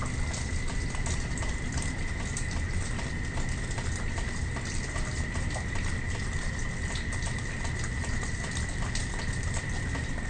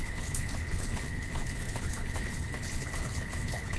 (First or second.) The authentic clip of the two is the first